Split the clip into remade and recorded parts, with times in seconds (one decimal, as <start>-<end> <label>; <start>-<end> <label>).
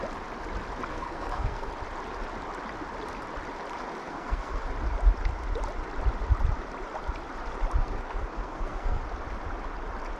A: 0.0-0.9 recorded; 0.9-1.7 remade; 1.7-4.0 recorded; 4.0-4.7 remade; 4.7-7.8 recorded; 7.8-9.0 remade; 9.0-10.2 recorded